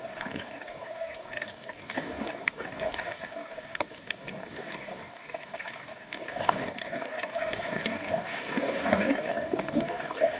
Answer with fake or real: fake